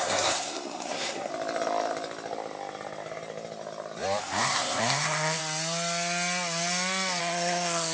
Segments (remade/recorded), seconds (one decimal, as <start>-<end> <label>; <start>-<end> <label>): 0.0-1.3 remade; 1.3-4.2 recorded; 4.2-5.4 remade; 5.4-7.2 recorded; 7.2-7.9 remade